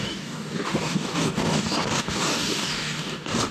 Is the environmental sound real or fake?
fake